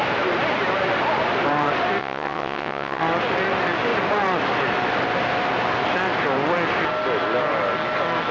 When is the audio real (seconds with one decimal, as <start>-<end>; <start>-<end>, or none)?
0.0-2.0; 3.0-8.3